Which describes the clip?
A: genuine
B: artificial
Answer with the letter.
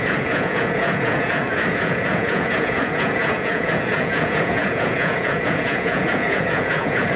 B